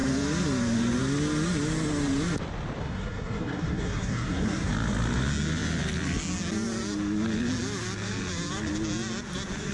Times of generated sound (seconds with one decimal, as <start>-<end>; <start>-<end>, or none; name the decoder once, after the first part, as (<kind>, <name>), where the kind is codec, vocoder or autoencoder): 2.8-4.7 (codec, SNAC)

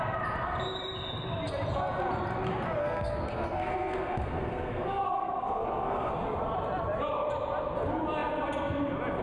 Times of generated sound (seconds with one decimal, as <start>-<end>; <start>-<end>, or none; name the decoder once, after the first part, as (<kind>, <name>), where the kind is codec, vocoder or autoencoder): 2.8-6.1 (codec, SNAC)

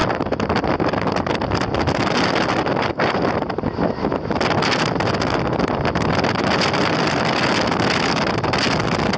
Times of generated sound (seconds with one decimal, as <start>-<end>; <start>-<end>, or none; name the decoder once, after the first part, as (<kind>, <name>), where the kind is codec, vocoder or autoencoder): none

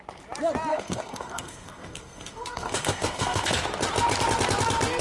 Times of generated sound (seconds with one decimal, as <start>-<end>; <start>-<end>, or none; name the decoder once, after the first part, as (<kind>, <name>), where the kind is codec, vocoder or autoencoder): 0.7-3.5 (codec, SNAC)

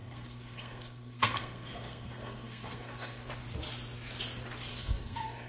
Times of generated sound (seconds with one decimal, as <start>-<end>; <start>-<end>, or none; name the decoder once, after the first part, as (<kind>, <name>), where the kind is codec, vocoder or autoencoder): 0.0-3.3 (codec, SNAC); 4.7-5.5

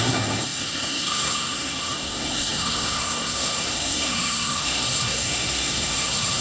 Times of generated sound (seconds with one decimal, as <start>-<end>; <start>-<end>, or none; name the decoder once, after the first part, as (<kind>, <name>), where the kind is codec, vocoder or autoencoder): 0.0-6.4 (codec, SNAC)